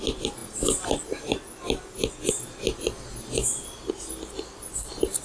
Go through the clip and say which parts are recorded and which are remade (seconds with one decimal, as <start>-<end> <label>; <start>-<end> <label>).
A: 0.0-5.2 recorded